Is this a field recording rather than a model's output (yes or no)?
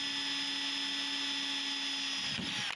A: yes